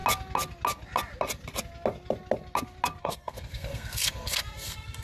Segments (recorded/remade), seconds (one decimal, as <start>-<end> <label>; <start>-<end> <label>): 0.0-3.0 recorded; 3.0-5.0 remade